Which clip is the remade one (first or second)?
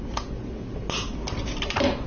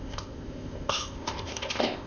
second